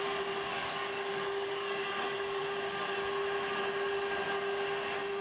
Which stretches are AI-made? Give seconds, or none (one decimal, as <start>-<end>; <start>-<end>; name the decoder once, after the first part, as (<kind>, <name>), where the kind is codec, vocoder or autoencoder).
0.5-2.4 (codec, DAC)